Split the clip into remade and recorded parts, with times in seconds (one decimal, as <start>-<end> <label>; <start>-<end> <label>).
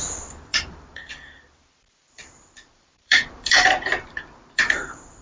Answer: 0.0-0.5 recorded; 0.5-1.1 remade; 1.1-2.0 recorded; 2.0-5.2 remade